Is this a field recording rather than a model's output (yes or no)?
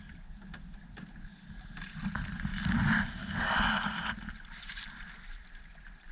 yes